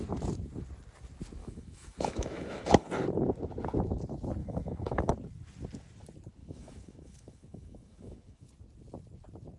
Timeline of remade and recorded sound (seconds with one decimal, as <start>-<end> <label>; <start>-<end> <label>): 0.0-1.4 recorded; 1.4-2.9 remade; 2.9-4.4 recorded; 4.4-5.1 remade; 5.1-6.4 recorded; 6.4-8.5 remade; 8.5-9.6 recorded

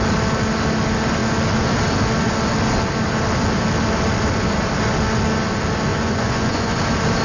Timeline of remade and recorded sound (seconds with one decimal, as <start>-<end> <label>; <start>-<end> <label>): 0.0-5.9 recorded; 5.9-6.8 remade; 6.8-7.2 recorded